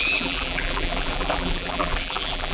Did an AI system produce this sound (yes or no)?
yes